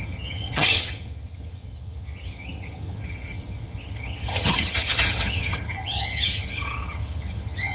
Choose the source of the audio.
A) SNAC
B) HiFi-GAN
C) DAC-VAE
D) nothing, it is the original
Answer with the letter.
B